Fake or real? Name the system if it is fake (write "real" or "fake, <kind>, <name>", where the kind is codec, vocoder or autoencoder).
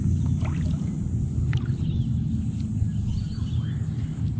real